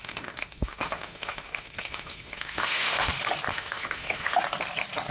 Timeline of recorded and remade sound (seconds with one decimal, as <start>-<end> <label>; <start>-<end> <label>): 0.0-3.1 remade; 3.1-3.5 recorded; 3.5-4.4 remade; 4.4-5.1 recorded